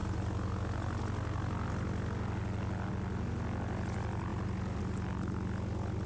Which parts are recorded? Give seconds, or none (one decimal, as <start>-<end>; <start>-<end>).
0.0-6.1